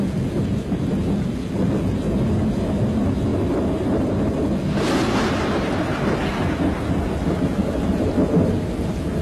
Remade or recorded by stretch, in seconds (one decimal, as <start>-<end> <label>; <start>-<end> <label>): 0.0-9.2 recorded